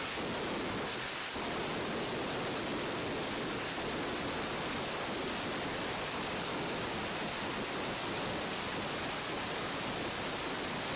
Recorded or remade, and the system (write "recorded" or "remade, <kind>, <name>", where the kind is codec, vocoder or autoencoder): recorded